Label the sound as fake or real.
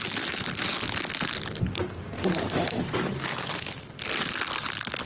real